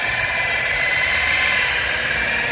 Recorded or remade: remade